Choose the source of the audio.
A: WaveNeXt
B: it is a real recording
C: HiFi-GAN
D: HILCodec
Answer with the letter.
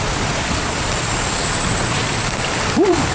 B